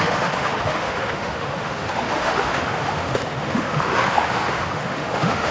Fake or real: fake